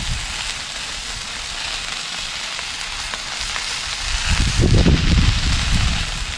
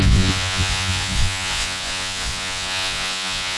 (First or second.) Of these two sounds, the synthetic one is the second